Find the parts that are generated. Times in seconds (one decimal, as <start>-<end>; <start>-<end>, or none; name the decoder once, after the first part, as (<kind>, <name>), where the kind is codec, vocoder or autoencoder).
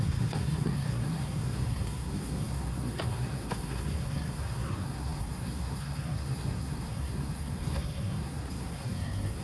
0.0-9.4 (codec, SNAC)